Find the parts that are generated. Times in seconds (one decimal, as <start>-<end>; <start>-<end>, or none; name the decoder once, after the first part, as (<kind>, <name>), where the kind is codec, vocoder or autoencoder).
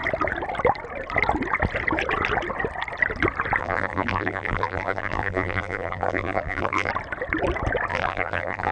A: 3.6-6.9 (vocoder, BigVGAN v2); 7.9-8.7